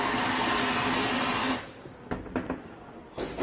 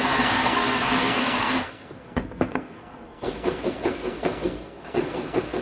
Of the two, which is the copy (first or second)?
second